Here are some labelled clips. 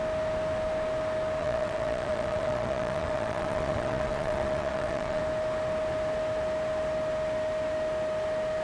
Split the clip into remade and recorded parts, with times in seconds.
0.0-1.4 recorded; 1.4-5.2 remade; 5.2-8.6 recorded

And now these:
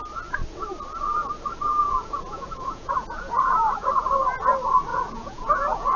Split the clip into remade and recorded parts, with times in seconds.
0.0-1.7 recorded; 1.7-4.1 remade; 4.1-4.9 recorded; 4.9-6.0 remade

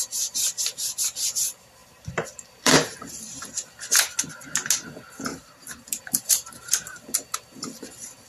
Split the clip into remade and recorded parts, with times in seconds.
0.0-1.8 recorded; 1.8-3.4 remade; 3.4-5.3 recorded; 5.3-6.0 remade; 6.0-8.3 recorded

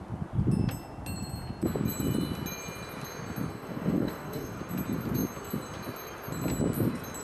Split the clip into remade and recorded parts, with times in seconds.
0.0-3.5 recorded; 3.5-4.6 remade; 4.6-7.2 recorded

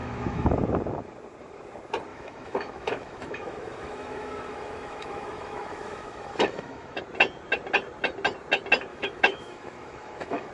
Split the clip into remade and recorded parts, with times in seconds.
0.0-0.5 remade; 0.5-2.1 recorded; 2.1-7.0 remade; 7.0-8.9 recorded; 8.9-10.5 remade